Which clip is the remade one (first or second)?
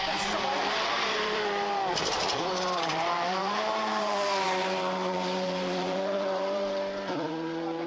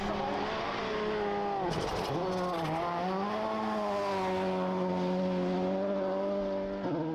first